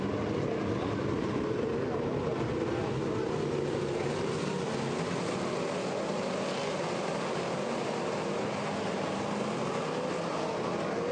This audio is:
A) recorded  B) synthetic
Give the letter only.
A